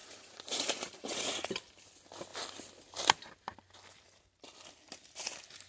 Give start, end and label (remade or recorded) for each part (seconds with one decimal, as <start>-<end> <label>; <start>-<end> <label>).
0.0-1.5 remade; 1.5-5.7 recorded